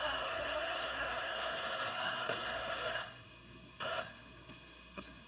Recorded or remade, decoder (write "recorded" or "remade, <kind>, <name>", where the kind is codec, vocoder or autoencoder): remade, codec, SNAC